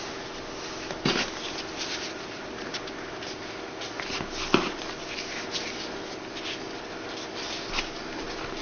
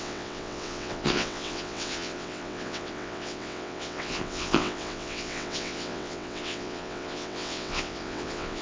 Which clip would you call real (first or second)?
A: first